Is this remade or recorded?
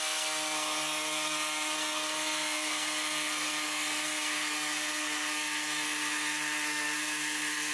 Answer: remade